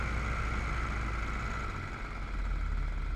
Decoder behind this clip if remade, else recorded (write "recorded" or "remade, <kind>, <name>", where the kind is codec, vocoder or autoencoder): recorded